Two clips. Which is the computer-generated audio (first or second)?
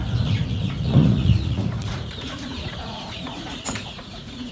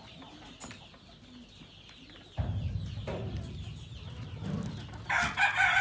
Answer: first